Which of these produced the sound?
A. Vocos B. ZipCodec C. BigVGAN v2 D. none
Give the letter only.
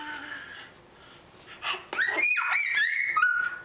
D